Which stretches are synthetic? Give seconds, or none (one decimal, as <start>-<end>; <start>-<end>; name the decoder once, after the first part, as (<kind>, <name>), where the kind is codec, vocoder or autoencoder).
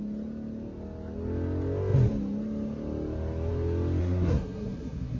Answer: 4.0-5.2 (codec, SNAC)